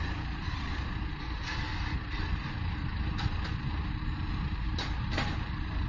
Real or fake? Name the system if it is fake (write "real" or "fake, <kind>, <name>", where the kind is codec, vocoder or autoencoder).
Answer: fake, vocoder, BigVGAN v2